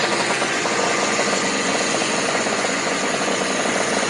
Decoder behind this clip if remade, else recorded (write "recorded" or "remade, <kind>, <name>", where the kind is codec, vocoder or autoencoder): remade, vocoder, Vocos